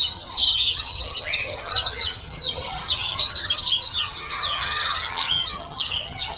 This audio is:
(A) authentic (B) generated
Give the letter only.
B